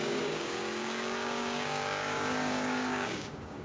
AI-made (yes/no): yes